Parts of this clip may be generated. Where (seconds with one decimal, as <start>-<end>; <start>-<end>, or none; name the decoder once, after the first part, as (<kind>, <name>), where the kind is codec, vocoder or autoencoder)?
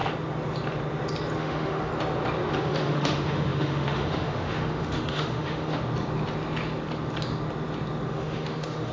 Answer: 1.4-1.9 (autoencoder, DAC-VAE); 2.6-5.8; 8.1-8.9